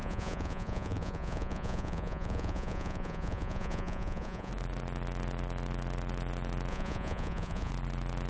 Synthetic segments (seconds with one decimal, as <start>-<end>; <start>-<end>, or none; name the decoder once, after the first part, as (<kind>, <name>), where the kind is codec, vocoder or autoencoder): 0.0-4.5 (vocoder, Vocos); 6.7-7.7